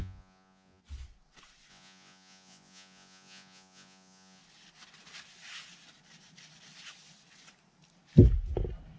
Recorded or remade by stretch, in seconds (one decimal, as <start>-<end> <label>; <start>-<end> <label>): 0.0-0.8 remade; 0.8-1.7 recorded; 1.7-4.4 remade; 4.4-9.0 recorded

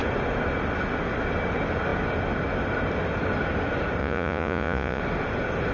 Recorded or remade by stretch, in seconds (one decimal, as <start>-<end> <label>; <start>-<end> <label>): 0.0-4.0 recorded; 4.0-5.0 remade; 5.0-5.7 recorded

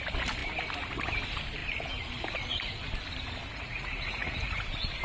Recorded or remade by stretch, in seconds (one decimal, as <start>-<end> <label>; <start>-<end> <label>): 0.0-3.5 recorded; 3.5-4.6 remade; 4.6-5.0 recorded

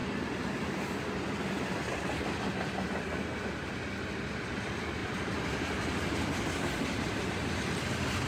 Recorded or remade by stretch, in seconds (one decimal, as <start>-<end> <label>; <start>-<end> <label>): 0.0-8.3 recorded

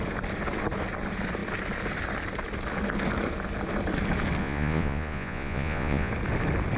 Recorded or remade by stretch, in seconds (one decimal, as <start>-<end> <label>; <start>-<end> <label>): 0.0-4.4 recorded; 4.4-6.1 remade; 6.1-6.8 recorded

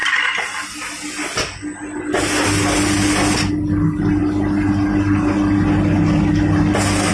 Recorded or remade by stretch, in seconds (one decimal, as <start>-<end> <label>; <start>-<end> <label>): 0.0-7.1 recorded

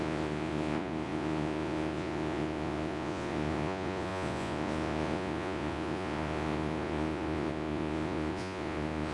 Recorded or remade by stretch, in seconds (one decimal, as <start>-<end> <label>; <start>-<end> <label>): 0.0-9.1 remade